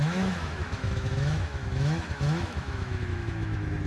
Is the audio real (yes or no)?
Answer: no